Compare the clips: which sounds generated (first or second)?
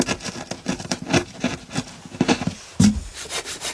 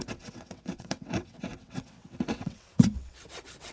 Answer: second